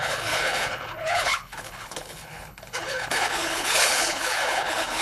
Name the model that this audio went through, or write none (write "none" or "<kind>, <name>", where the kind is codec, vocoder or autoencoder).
codec, HILCodec